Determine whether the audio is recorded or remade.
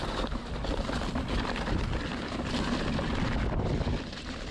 recorded